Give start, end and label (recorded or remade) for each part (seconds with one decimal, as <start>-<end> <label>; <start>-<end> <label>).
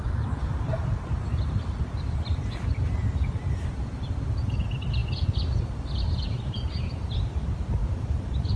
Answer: 0.0-7.8 recorded; 7.8-8.6 remade